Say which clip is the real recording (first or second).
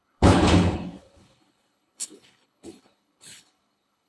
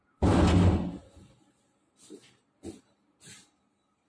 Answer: second